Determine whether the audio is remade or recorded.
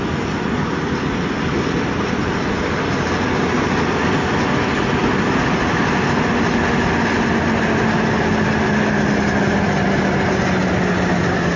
recorded